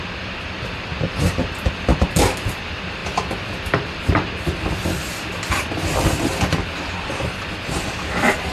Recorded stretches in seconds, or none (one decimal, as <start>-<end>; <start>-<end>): none